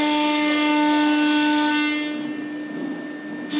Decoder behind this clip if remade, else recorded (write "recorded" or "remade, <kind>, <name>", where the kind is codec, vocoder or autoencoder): recorded